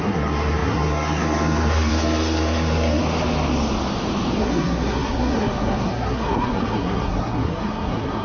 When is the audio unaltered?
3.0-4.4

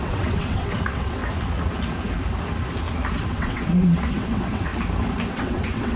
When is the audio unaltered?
1.2-3.2; 4.7-5.3

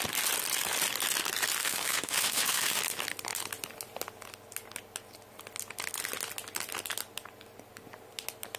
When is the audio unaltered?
0.0-1.6; 2.8-8.6

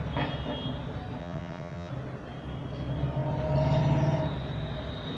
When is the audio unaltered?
0.0-1.2; 1.9-5.2

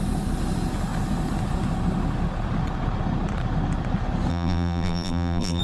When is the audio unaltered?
0.0-4.3

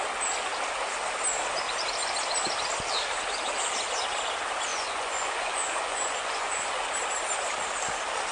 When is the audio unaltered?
0.0-4.7; 6.8-8.3

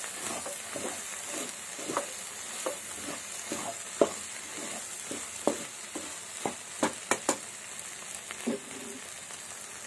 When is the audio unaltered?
0.0-9.9